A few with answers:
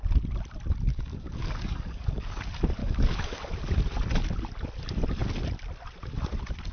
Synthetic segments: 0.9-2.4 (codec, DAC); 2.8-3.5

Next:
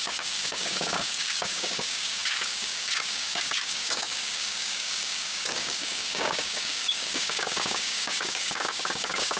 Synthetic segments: 0.0-9.4 (codec, DAC)

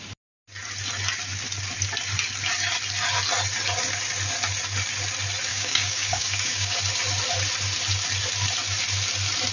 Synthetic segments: 5.5-6.8 (codec, DAC)

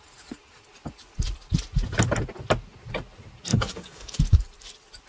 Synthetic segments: 3.5-4.2 (codec, DAC)

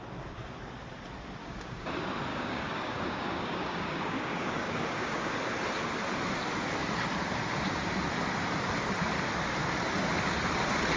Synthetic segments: 1.4-1.9 (codec, DAC); 2.3-5.3